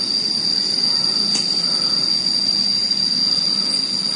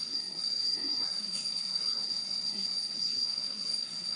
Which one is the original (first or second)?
first